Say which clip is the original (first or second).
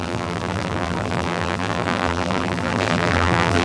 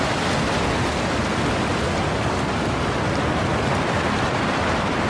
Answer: second